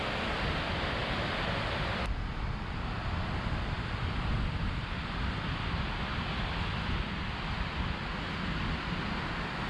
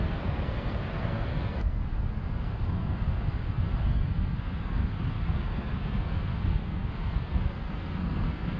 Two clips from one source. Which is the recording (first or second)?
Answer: first